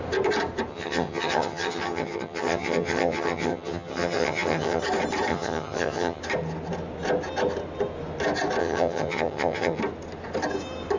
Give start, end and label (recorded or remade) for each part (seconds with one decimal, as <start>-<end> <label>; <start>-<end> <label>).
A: 0.0-0.7 recorded; 0.7-4.8 remade; 4.8-5.3 recorded; 5.3-6.2 remade; 6.2-8.6 recorded; 8.6-9.8 remade; 9.8-11.0 recorded